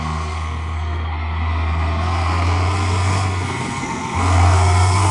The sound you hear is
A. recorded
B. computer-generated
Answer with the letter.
B